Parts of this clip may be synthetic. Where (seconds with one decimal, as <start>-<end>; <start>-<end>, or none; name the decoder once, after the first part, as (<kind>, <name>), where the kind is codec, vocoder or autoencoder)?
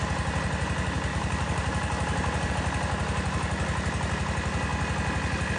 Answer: 1.1-2.5 (vocoder, BigVGAN v2)